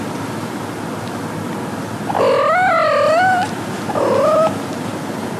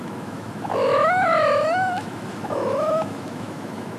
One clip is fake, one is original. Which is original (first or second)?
first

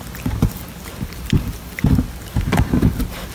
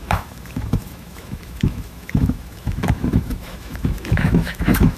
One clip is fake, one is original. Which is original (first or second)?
first